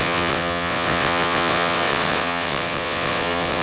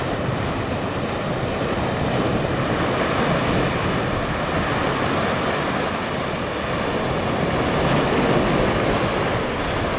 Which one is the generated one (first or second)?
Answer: first